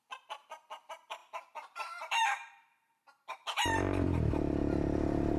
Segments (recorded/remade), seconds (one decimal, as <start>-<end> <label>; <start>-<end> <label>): 0.0-5.4 remade